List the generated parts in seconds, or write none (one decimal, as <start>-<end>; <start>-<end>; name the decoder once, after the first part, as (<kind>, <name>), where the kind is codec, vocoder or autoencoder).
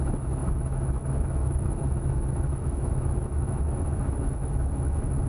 0.0-5.3 (autoencoder, DAC-VAE)